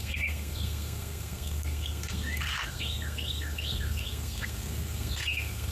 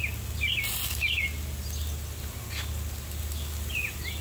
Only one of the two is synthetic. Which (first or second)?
first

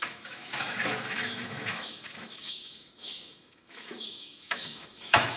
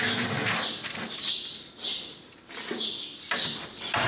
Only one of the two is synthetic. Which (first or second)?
first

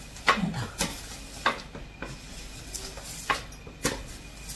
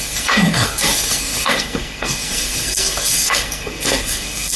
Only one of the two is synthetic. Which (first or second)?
second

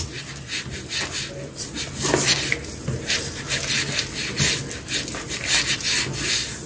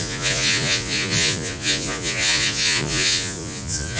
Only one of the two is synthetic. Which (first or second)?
second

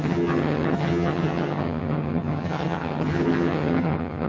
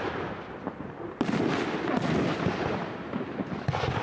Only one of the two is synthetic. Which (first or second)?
first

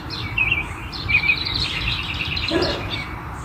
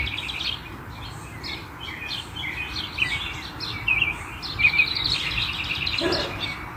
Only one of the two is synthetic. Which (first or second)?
first